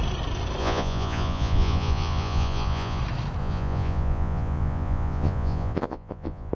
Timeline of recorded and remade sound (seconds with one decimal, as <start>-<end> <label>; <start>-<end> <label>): 0.0-0.6 recorded; 0.6-3.0 remade; 3.0-3.4 recorded; 3.4-6.5 remade